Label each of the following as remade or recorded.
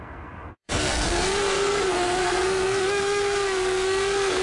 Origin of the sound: remade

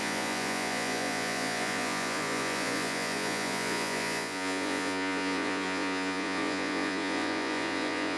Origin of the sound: remade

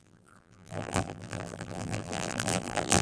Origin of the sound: remade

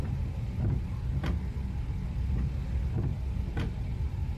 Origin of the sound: recorded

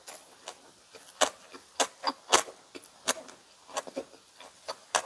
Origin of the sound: recorded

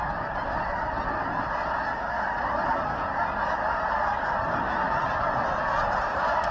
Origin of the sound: recorded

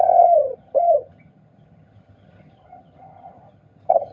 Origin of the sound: remade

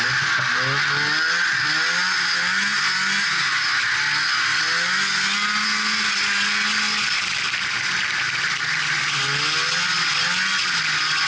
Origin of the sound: recorded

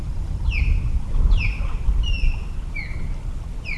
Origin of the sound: recorded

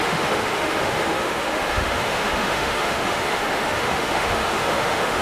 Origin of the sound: remade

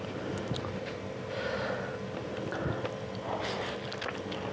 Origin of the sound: recorded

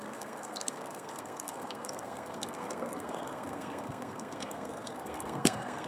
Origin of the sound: remade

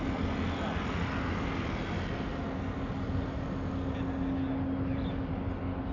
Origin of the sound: recorded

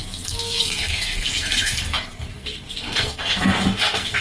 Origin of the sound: remade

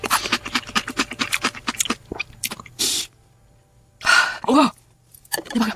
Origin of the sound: remade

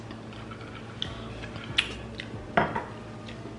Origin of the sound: recorded